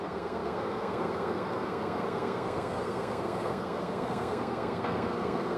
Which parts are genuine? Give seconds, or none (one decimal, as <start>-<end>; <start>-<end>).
none